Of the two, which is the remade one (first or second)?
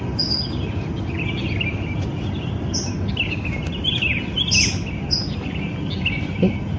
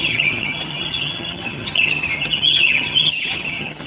second